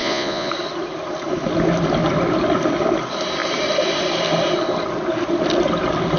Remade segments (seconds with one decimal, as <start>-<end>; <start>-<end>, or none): 0.0-0.5